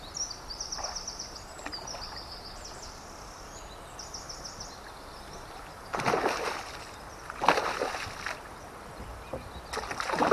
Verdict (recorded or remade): recorded